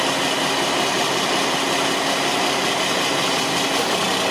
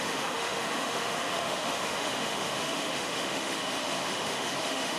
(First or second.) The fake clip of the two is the second